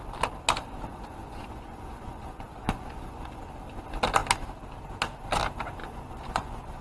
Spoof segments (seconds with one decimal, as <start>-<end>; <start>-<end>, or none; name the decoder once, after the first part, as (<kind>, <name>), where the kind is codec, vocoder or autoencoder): 0.9-3.4 (vocoder, Vocos); 5.8-6.8